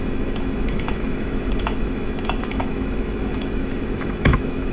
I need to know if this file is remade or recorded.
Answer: remade